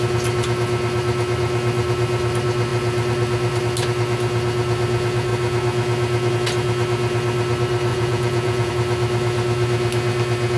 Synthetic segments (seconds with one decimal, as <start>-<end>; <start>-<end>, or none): 7.9-8.7